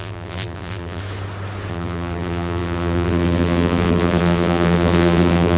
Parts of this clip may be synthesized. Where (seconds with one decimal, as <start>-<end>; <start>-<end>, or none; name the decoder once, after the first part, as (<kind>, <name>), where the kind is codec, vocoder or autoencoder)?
0.0-1.0 (vocoder, BigVGAN v2); 1.7-5.6